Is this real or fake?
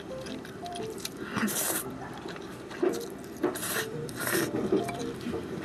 fake